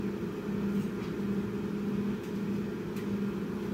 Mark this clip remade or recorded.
recorded